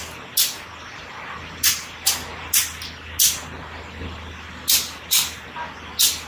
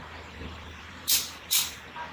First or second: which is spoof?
second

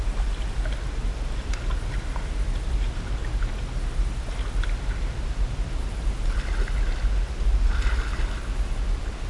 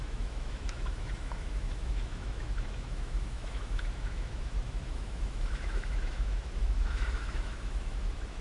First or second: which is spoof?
second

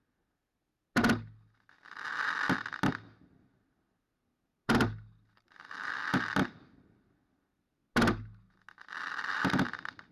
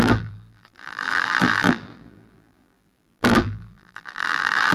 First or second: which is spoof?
second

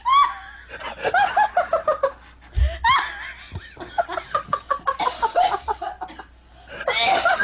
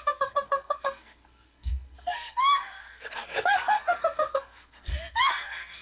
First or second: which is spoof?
second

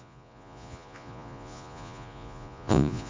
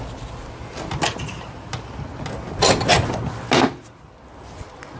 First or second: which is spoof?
first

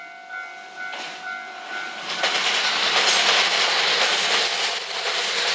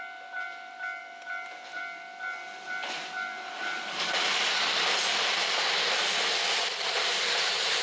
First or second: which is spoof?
second